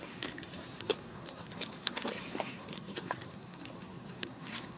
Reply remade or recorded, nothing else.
remade